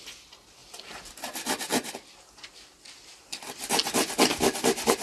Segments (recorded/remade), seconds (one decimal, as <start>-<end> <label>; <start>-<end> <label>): 0.0-0.6 recorded; 0.6-1.1 remade; 1.1-1.7 recorded; 1.7-3.7 remade; 3.7-5.0 recorded